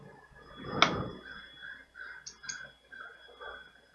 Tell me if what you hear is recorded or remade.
recorded